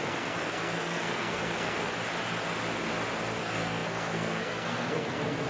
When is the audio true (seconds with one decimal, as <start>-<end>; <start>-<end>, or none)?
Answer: 1.9-3.4